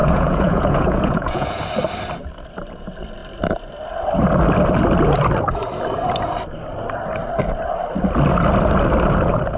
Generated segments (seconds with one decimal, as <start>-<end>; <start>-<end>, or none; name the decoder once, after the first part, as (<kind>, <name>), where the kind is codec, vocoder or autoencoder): 0.0-1.6 (vocoder, Vocos)